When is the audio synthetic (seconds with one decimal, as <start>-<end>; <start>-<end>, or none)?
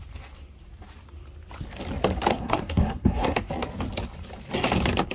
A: 2.3-3.5